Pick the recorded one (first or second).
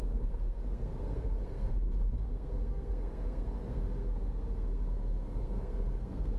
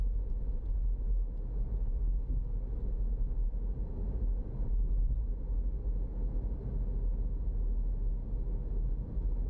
second